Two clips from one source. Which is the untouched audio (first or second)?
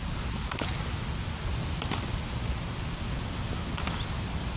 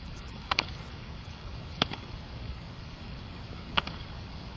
first